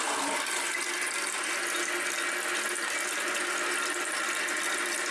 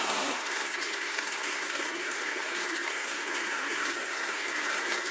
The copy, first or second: second